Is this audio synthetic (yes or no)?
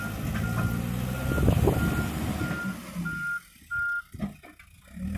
no